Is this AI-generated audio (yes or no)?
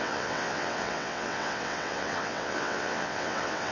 yes